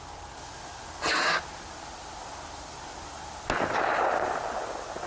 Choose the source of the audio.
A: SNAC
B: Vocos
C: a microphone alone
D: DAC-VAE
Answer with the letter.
C